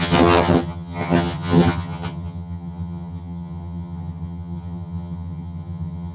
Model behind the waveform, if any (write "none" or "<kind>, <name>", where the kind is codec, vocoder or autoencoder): vocoder, HiFi-GAN